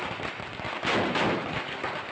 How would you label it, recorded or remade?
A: recorded